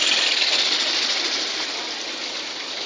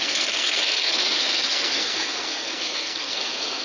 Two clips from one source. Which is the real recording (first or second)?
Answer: first